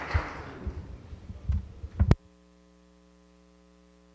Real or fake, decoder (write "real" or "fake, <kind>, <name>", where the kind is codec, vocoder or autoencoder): real